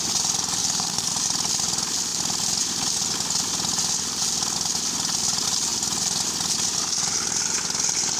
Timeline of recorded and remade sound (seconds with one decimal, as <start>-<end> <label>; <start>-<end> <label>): 0.0-0.6 recorded; 0.6-1.1 remade; 1.1-8.2 recorded